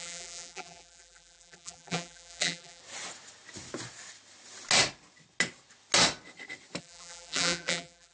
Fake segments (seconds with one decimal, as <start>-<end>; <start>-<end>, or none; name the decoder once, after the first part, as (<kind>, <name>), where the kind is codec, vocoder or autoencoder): 0.0-2.8 (vocoder, BigVGAN v2); 6.8-8.1